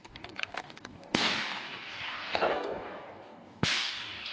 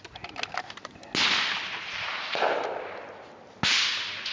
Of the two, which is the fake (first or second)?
first